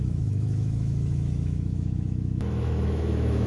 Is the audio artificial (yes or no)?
yes